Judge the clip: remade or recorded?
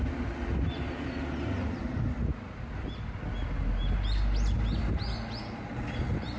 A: recorded